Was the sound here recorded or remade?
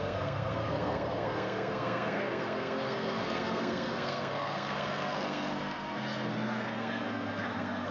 remade